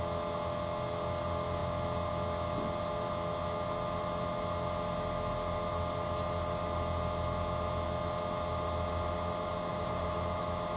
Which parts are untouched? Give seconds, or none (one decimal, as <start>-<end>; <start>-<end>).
0.0-9.7; 10.4-10.8